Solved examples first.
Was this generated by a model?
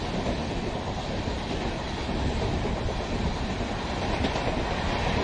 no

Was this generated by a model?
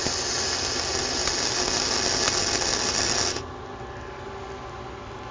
no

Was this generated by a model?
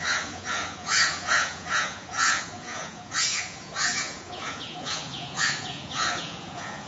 yes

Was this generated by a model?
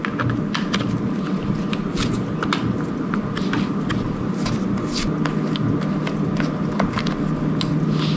no